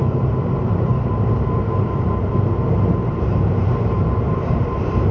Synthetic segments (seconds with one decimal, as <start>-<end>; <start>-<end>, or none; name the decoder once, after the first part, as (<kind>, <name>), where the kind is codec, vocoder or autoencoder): 0.0-2.3 (vocoder, BigVGAN v2); 3.0-5.1